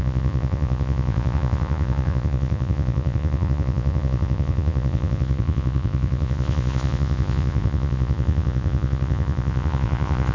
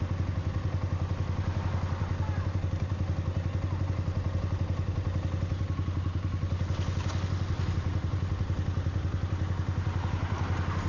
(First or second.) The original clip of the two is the second